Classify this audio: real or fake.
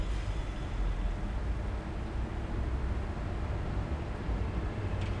real